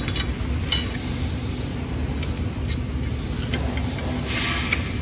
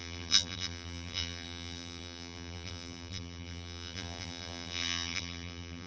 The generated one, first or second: second